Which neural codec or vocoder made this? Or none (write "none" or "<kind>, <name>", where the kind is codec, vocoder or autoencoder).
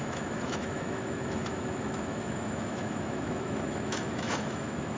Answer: autoencoder, DAC-VAE